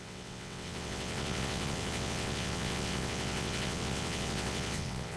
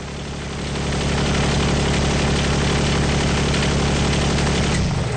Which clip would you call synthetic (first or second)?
first